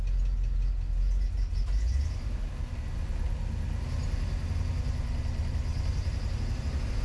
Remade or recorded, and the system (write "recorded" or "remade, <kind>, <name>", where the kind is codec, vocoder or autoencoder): recorded